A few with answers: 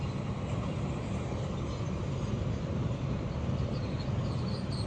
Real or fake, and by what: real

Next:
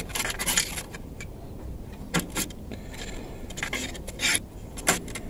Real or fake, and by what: fake, vocoder, BigVGAN v2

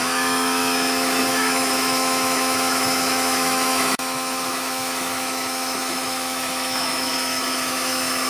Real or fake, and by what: fake, autoencoder, DAC-VAE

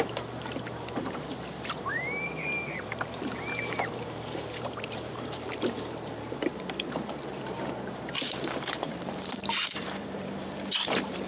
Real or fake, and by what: fake, vocoder, BigVGAN v2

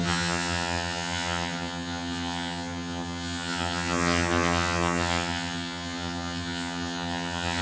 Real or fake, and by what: fake, vocoder, HiFi-GAN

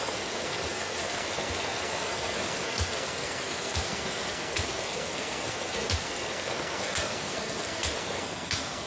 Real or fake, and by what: fake, codec, SNAC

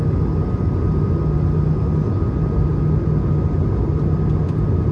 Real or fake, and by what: real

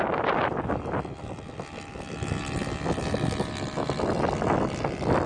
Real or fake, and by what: real